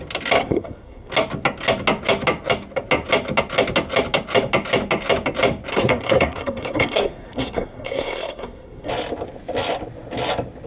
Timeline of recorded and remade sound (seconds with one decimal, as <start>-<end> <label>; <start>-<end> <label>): 0.0-0.4 recorded; 0.4-1.1 remade; 1.1-5.7 recorded; 5.7-8.9 remade; 8.9-10.7 recorded